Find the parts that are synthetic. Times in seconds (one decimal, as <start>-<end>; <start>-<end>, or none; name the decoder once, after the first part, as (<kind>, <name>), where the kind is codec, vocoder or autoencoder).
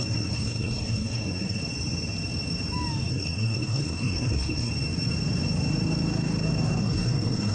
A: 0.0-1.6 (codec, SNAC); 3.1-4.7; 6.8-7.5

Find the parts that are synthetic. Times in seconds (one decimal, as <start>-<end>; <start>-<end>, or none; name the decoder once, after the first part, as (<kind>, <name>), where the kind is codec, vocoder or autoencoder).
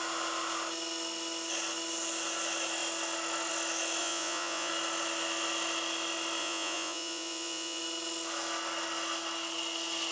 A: 4.0-4.7 (vocoder, Vocos); 6.4-7.8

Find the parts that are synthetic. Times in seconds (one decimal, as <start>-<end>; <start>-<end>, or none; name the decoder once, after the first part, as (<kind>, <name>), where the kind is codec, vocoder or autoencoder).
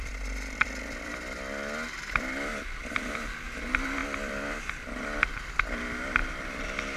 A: 0.0-1.1 (vocoder, BigVGAN v2); 2.2-4.0; 4.6-7.0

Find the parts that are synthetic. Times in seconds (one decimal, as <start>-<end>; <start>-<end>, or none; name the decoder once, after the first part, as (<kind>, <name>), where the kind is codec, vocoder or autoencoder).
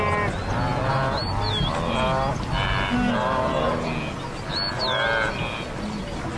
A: none